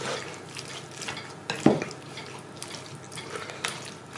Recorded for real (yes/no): yes